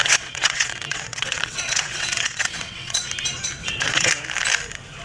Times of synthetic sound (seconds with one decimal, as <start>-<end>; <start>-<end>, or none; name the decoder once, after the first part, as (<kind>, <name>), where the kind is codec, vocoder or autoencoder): 0.0-3.0 (vocoder, WaveNeXt); 3.6-4.1